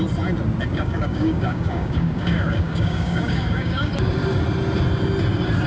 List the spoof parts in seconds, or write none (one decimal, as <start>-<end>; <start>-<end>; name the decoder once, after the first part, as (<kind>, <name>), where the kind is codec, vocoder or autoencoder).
0.7-3.9 (codec, DAC)